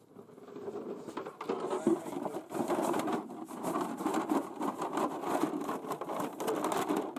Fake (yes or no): no